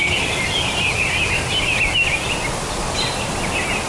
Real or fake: real